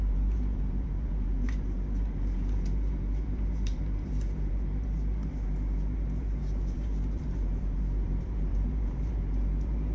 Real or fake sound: fake